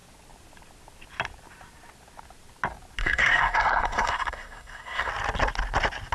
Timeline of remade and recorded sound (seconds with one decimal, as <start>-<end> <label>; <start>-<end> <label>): 0.0-3.0 recorded; 3.0-5.1 remade; 5.1-6.1 recorded